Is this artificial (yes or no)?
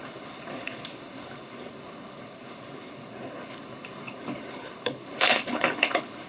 yes